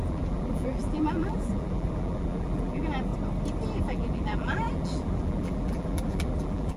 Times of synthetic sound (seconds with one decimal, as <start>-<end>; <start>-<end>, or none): 0.0-3.1; 3.8-6.8